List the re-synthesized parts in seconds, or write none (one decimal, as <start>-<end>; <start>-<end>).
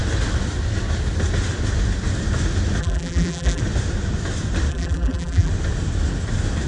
2.8-3.6; 4.7-5.5